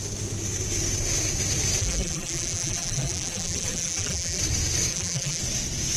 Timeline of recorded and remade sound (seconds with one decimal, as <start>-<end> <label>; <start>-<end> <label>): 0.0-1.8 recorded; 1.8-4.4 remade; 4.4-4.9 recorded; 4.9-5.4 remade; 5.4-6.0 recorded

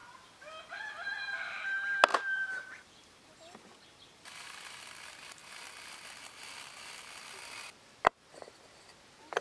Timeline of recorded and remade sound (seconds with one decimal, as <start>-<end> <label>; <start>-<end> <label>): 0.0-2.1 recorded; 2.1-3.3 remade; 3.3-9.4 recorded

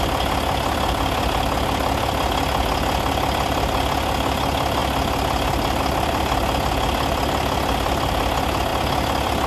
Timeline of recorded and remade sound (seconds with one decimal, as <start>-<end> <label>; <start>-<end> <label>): 0.0-9.5 recorded

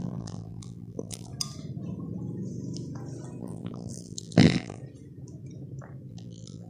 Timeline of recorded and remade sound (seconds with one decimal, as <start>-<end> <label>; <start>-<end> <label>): 0.0-1.3 remade; 1.3-3.4 recorded; 3.4-4.8 remade; 4.8-6.1 recorded; 6.1-6.7 remade

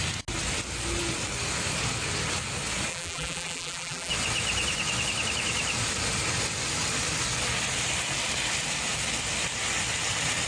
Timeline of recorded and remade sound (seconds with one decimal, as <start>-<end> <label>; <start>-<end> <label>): 0.0-2.9 recorded; 2.9-4.1 remade; 4.1-10.5 recorded

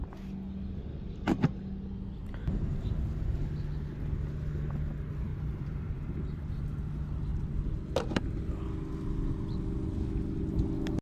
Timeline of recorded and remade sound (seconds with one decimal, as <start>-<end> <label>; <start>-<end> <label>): 0.0-2.2 recorded; 2.2-3.5 remade; 3.5-5.3 recorded; 5.3-6.5 remade; 6.5-11.0 recorded

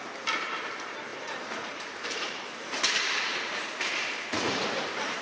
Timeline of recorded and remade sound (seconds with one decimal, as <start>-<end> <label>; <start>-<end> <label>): 0.0-1.1 recorded; 1.1-2.7 remade; 2.7-3.3 recorded; 3.3-5.2 remade